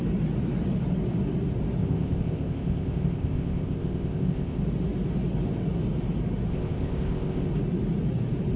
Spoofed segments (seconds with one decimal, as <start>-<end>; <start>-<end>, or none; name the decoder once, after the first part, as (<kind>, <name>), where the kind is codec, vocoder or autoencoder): 1.8-4.6 (codec, ZipCodec); 6.5-7.5